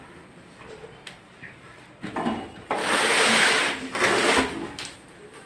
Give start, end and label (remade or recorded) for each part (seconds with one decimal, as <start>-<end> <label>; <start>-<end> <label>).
0.0-2.8 recorded; 2.8-3.5 remade; 3.5-5.5 recorded